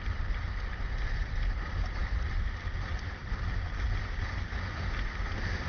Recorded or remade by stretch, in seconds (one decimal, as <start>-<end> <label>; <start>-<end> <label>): 0.0-5.7 recorded

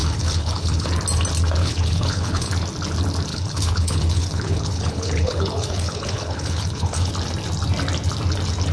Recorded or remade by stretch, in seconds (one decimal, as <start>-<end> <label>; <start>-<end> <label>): 0.0-0.9 remade; 0.9-1.6 recorded; 1.6-2.5 remade; 2.5-3.3 recorded; 3.3-7.1 remade; 7.1-8.7 recorded

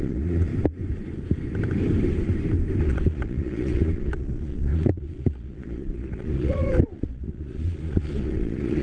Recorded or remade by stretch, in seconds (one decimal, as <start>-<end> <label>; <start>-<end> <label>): 0.0-0.5 remade; 0.5-2.8 recorded; 2.8-8.8 remade

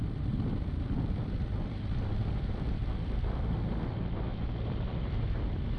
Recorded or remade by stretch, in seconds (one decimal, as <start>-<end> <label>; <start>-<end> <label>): 0.0-4.3 remade; 4.3-4.9 recorded; 4.9-5.8 remade

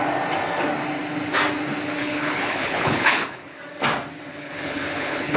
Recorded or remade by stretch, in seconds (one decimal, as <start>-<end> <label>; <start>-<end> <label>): 0.0-2.0 recorded; 2.0-3.6 remade; 3.6-4.3 recorded; 4.3-5.4 remade

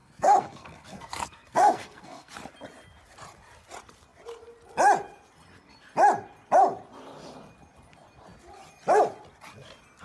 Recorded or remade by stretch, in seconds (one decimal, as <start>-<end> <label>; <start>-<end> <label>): 0.0-2.3 remade; 2.3-10.0 recorded

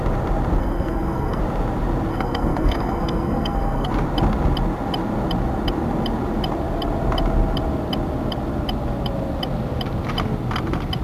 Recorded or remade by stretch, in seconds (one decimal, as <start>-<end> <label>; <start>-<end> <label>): 0.0-0.6 recorded; 0.6-1.4 remade; 1.4-2.1 recorded; 2.1-3.9 remade; 3.9-11.0 recorded

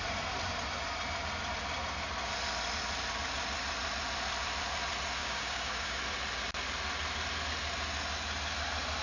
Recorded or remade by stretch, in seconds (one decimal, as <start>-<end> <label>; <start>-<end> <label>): 0.0-5.2 recorded; 5.2-6.0 remade; 6.0-9.0 recorded